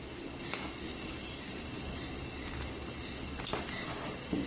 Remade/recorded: recorded